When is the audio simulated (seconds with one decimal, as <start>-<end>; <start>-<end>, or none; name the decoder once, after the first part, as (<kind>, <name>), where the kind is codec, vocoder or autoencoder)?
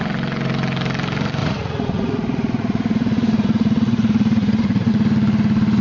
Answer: 1.4-4.9 (vocoder, Vocos)